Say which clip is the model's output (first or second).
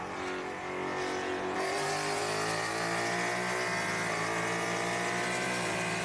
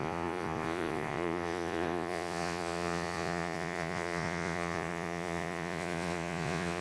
second